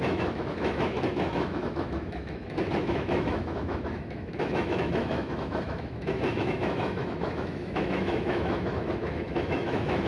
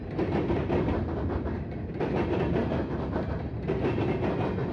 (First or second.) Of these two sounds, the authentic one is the second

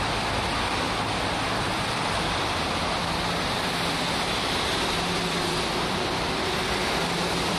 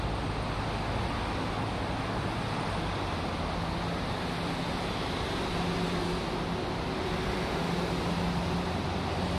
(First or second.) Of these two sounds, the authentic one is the second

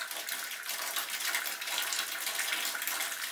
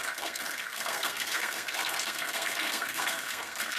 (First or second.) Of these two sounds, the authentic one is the first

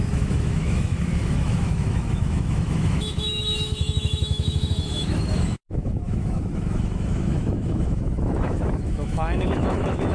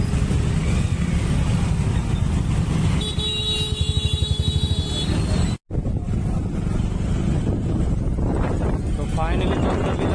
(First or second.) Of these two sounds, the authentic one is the second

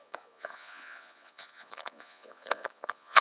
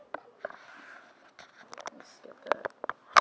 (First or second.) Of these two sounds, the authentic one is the second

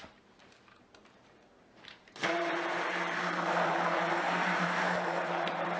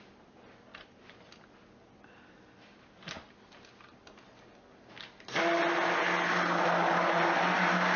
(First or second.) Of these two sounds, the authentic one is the second